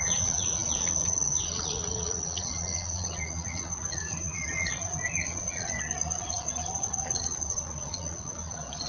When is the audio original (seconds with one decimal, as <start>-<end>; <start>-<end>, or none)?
none